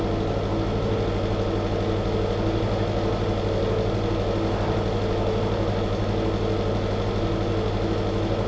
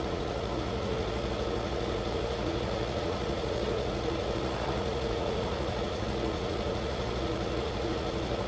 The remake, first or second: second